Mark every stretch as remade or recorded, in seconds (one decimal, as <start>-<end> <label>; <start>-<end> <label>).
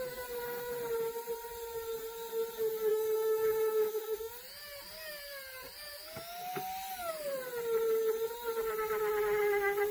0.0-2.9 recorded; 2.9-4.3 remade; 4.3-9.9 recorded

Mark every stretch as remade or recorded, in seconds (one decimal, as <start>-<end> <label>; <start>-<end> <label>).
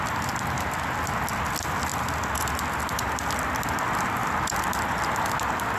0.0-5.8 recorded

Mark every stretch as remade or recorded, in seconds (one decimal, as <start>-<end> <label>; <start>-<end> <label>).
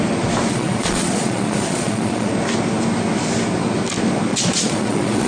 0.0-0.5 recorded; 0.5-2.3 remade; 2.3-4.3 recorded; 4.3-5.3 remade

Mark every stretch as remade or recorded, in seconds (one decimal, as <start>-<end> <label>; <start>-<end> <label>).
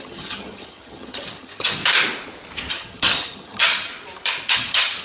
0.0-1.8 remade; 1.8-2.7 recorded; 2.7-3.9 remade; 3.9-4.5 recorded; 4.5-5.0 remade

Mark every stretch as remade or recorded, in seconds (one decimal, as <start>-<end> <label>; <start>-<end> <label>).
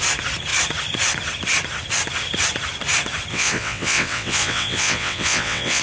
0.0-3.3 recorded; 3.3-5.8 remade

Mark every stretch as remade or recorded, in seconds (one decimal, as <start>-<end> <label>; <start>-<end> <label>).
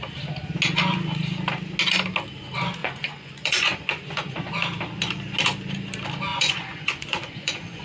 0.0-2.8 recorded; 2.8-4.5 remade; 4.5-6.3 recorded; 6.3-7.8 remade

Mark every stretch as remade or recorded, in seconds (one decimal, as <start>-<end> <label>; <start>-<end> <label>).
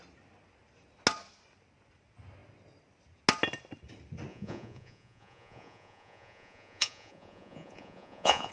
0.0-4.3 recorded; 4.3-8.5 remade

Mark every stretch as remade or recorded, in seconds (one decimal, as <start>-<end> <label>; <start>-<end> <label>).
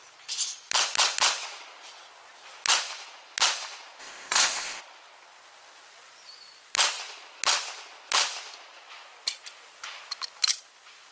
0.0-4.0 recorded; 4.0-4.8 remade; 4.8-11.1 recorded